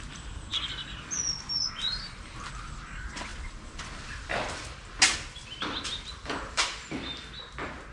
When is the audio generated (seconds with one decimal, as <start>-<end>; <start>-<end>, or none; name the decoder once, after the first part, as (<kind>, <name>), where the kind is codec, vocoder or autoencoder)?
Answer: none